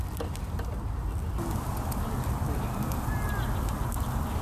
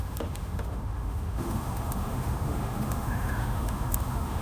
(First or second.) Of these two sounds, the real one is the first